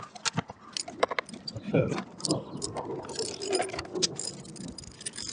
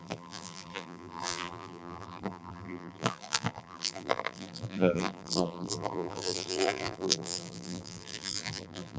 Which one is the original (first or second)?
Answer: first